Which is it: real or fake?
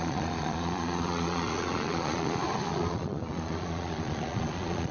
fake